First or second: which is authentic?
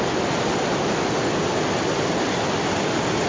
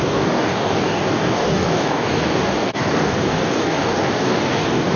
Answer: first